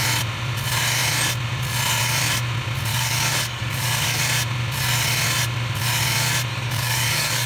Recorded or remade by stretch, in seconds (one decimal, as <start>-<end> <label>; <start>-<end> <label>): 0.0-2.9 recorded; 2.9-4.2 remade; 4.2-6.5 recorded; 6.5-7.5 remade